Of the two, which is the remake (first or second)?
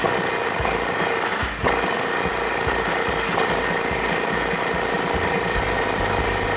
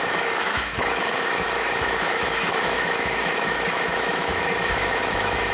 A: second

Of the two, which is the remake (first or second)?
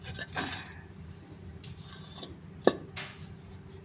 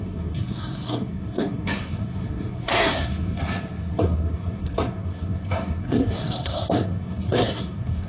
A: second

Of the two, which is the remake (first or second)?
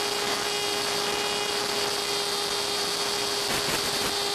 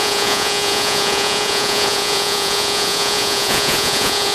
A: second